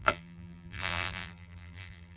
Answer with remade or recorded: remade